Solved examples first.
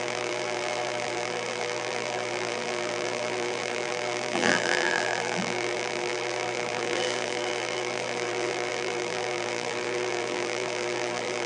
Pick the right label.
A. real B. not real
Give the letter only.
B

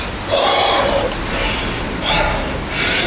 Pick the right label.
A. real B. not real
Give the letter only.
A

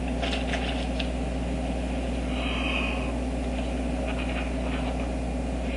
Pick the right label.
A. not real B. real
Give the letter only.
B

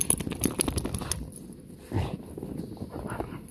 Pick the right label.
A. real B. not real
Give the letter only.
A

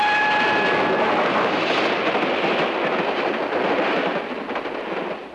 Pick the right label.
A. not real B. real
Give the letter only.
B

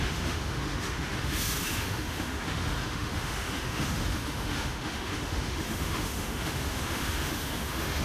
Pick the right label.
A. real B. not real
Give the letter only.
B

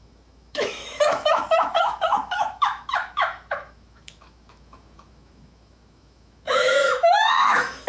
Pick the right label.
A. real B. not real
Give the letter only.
B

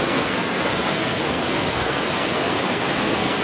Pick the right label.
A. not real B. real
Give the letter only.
A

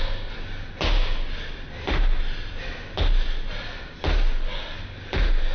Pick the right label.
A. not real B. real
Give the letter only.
B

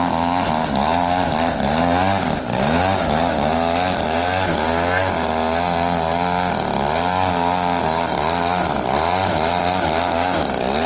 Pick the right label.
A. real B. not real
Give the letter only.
A